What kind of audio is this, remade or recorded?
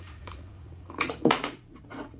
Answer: remade